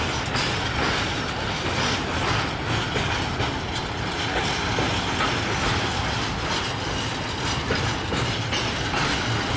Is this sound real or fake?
real